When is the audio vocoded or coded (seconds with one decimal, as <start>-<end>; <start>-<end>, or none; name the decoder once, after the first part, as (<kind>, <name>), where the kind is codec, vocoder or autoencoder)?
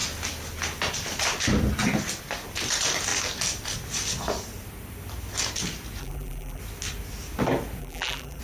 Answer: 6.0-6.6 (vocoder, BigVGAN v2); 7.8-8.4